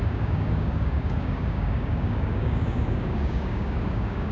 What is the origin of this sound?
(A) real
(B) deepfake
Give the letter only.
B